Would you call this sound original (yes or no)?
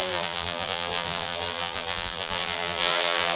no